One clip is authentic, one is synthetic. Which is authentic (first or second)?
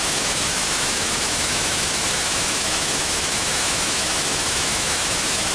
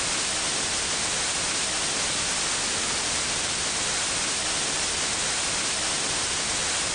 second